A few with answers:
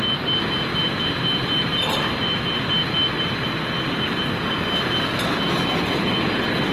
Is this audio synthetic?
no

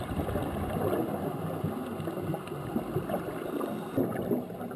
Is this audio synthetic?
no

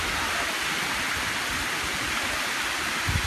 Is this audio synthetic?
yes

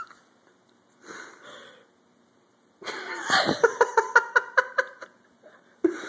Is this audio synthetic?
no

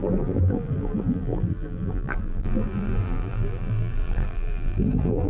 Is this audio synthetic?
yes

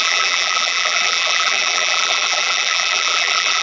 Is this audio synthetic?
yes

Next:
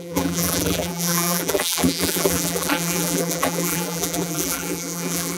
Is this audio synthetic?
yes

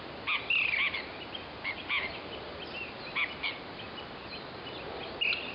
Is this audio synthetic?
no